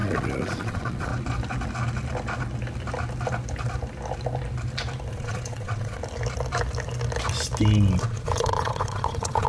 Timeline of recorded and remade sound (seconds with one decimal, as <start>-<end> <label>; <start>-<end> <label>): 0.0-1.1 remade; 1.1-5.1 recorded; 5.1-6.0 remade; 6.0-8.0 recorded; 8.0-9.5 remade